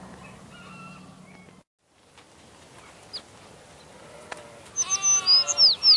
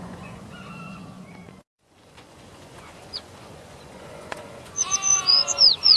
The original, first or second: first